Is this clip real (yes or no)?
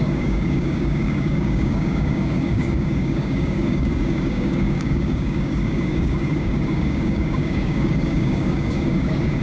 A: no